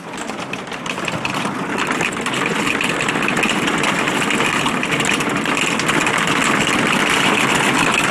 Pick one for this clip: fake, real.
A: real